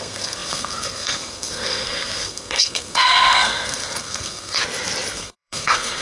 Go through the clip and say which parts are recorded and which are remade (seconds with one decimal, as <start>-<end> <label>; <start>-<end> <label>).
0.0-4.6 remade; 4.6-5.1 recorded; 5.1-6.0 remade